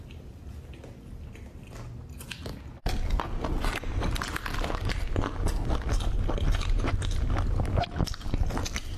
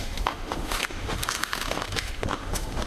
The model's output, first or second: second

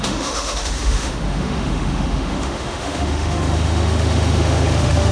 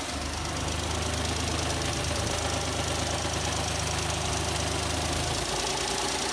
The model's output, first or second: first